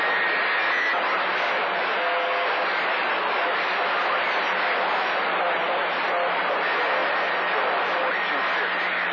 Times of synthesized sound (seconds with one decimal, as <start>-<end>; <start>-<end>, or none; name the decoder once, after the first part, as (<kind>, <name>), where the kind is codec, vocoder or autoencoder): none